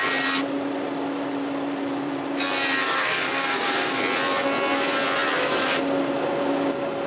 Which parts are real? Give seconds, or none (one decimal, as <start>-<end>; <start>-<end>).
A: 0.0-2.8; 4.0-7.1